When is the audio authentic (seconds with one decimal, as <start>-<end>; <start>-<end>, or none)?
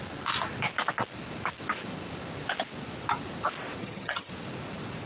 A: 0.0-3.8; 4.3-5.1